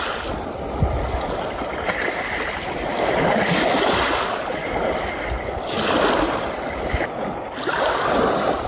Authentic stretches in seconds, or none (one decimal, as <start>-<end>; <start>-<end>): 0.0-8.7